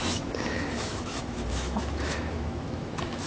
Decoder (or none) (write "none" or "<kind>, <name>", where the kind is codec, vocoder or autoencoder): autoencoder, DAC-VAE